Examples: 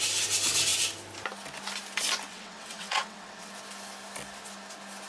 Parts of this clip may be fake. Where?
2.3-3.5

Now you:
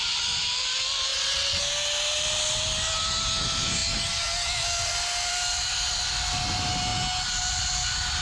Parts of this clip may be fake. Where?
1.1-1.6

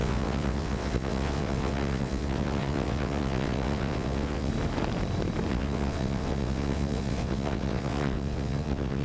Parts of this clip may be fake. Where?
0.0-4.5; 5.5-9.0